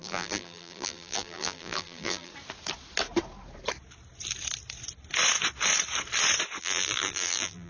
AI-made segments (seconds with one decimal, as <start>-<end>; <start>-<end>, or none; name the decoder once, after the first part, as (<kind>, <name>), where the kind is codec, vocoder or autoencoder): 0.0-2.3 (vocoder, BigVGAN v2); 6.6-7.7